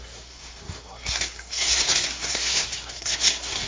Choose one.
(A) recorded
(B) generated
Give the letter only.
B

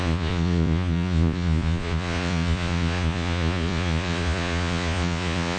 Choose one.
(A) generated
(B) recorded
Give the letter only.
A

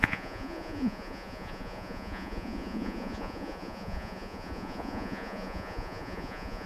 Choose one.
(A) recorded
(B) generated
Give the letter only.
B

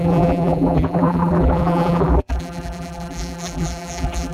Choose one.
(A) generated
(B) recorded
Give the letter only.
A